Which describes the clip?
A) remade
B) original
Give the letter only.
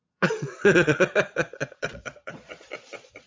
A